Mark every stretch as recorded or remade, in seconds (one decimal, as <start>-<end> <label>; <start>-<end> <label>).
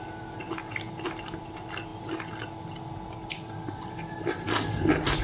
0.0-5.2 recorded